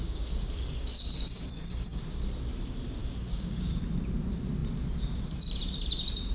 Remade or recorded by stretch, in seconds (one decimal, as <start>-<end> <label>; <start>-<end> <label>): 0.0-2.0 remade; 2.0-3.0 recorded; 3.0-3.8 remade; 3.8-6.3 recorded